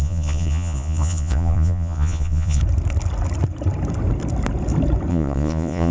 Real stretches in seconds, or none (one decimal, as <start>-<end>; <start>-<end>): 2.6-5.1